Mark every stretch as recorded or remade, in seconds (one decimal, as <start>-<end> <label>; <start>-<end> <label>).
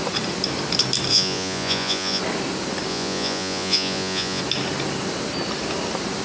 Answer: 0.0-1.1 recorded; 1.1-2.2 remade; 2.2-2.9 recorded; 2.9-4.4 remade; 4.4-6.2 recorded